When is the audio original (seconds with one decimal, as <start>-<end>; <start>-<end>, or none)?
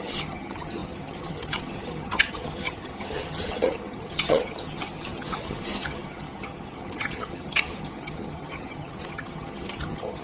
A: none